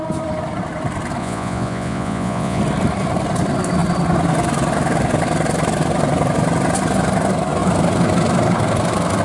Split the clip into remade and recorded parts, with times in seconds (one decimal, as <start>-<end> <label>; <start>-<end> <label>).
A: 0.0-1.2 recorded; 1.2-2.6 remade; 2.6-9.2 recorded